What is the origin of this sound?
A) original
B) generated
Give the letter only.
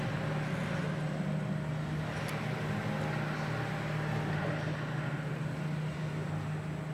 A